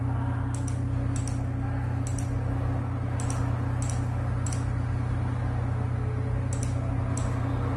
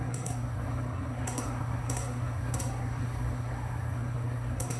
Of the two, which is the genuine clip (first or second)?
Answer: first